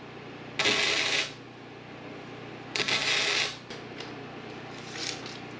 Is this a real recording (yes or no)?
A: yes